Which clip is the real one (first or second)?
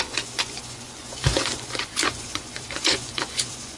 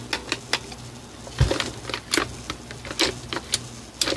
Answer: second